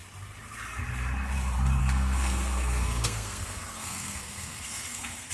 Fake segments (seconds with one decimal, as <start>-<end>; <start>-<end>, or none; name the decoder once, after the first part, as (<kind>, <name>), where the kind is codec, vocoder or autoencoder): 1.8-5.3 (codec, SNAC)